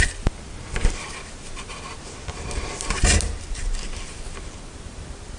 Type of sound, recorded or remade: recorded